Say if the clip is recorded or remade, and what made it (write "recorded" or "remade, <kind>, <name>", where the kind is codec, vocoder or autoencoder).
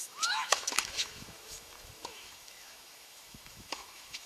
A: remade, autoencoder, DAC-VAE